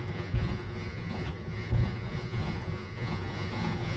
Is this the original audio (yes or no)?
no